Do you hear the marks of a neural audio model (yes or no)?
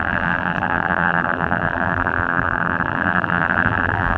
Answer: yes